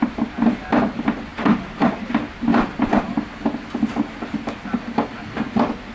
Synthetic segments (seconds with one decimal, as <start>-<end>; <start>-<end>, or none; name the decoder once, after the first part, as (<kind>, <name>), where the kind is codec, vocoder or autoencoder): 2.5-5.5 (vocoder, BigVGAN v2)